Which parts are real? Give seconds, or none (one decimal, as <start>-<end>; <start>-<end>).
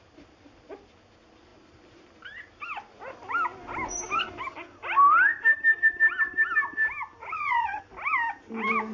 0.0-7.2; 7.8-8.9